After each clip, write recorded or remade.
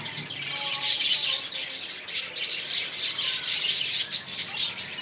recorded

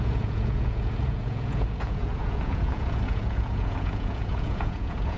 remade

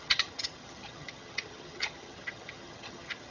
remade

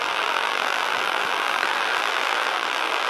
remade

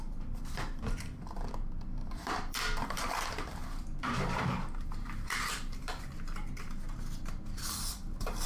remade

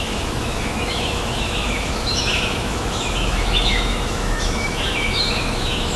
remade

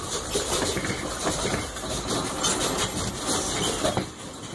recorded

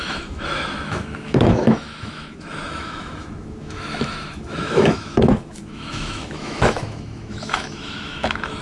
remade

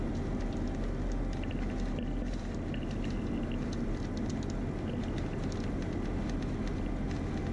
recorded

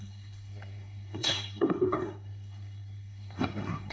remade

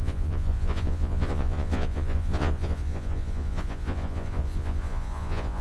remade